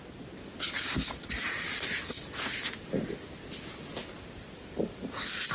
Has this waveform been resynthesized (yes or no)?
no